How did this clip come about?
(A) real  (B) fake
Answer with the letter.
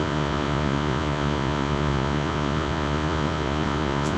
B